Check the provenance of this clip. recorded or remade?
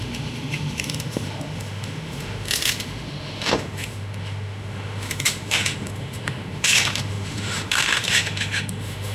remade